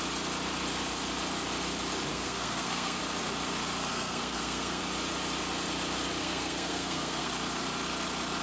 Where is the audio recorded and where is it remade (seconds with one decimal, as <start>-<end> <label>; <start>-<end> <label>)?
0.0-2.1 recorded; 2.1-3.0 remade; 3.0-3.9 recorded; 3.9-4.8 remade; 4.8-6.2 recorded; 6.2-7.3 remade; 7.3-8.4 recorded